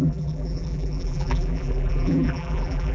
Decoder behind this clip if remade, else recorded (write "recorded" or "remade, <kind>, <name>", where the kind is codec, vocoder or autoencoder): remade, vocoder, BigVGAN v2